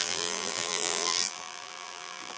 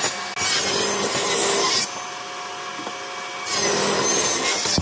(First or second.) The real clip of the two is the second